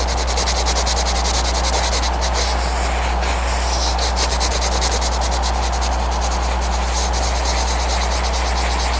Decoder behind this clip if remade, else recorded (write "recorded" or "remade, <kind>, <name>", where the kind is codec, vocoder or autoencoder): recorded